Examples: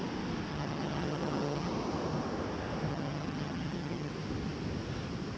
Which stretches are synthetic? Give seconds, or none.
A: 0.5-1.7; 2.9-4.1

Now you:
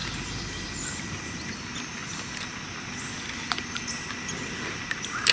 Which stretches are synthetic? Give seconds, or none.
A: none

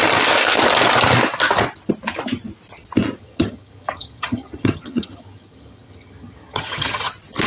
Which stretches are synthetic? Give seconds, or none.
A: 3.2-7.1

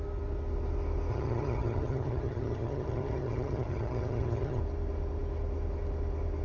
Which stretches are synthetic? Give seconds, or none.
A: 1.1-4.6